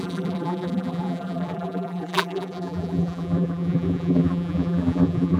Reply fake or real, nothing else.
fake